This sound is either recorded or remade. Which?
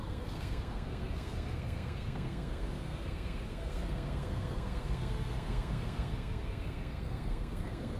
remade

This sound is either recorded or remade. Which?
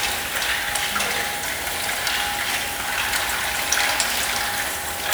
recorded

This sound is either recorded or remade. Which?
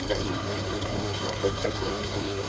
remade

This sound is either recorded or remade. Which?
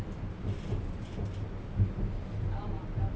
recorded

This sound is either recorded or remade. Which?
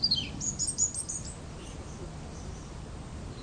remade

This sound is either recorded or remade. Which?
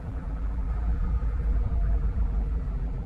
remade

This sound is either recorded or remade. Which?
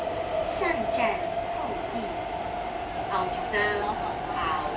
recorded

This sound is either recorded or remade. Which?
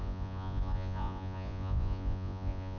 remade